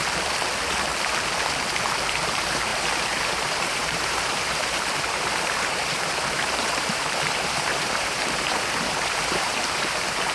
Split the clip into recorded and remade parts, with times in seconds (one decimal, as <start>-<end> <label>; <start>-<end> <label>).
0.0-2.2 recorded; 2.2-10.3 remade